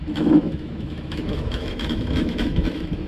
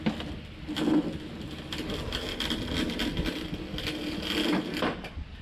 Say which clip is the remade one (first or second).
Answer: first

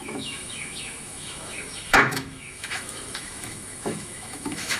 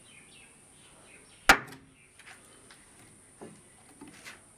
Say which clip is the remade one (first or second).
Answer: first